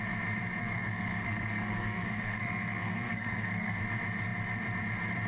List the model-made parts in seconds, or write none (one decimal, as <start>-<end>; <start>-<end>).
0.6-3.8